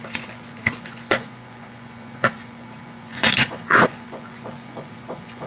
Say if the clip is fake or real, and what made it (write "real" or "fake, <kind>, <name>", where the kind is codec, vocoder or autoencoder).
fake, vocoder, Vocos